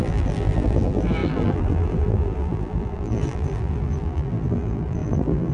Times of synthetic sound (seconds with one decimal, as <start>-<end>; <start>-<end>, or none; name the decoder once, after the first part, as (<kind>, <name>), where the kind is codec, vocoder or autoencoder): 0.0-5.5 (vocoder, BigVGAN v2)